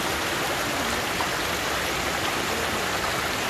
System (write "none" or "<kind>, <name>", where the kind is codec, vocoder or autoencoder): none